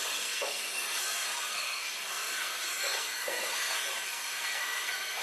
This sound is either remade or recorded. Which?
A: remade